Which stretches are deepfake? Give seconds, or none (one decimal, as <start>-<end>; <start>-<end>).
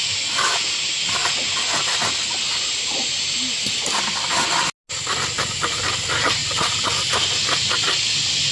none